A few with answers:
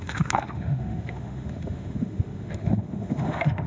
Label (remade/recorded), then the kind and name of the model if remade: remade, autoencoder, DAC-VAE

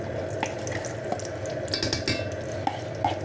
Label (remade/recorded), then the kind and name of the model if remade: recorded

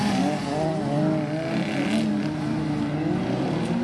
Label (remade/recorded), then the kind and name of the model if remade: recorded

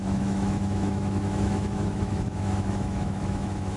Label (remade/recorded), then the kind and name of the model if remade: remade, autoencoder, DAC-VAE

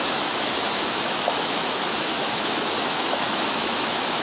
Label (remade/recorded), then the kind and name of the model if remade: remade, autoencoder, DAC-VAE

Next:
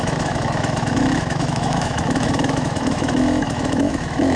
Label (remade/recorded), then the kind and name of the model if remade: remade, autoencoder, DAC-VAE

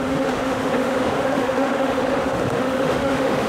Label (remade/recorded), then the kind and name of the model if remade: remade, autoencoder, DAC-VAE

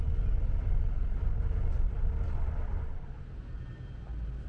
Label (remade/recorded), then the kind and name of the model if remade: recorded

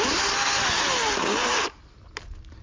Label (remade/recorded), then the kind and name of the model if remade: recorded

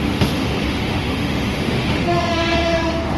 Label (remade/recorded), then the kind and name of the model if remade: remade, autoencoder, DAC-VAE